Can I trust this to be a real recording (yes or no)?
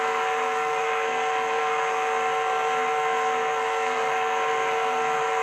no